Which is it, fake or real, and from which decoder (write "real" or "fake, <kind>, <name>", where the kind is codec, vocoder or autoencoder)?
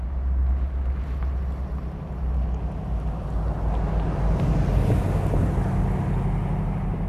real